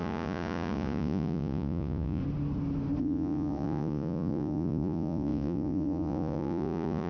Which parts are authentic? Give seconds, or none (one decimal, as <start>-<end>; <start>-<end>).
2.2-3.0